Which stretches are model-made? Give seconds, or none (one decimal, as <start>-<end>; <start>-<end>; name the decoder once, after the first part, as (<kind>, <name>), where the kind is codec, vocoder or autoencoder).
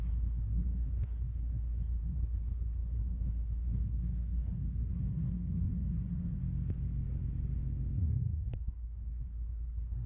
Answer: 0.0-6.4 (codec, SNAC); 8.0-10.1